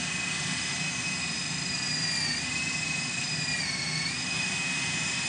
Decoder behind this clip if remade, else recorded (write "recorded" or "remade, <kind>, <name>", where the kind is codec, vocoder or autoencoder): recorded